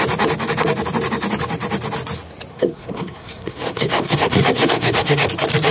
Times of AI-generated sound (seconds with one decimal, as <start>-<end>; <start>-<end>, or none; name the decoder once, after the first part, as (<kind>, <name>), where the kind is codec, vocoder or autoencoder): 2.5-5.3 (codec, SNAC)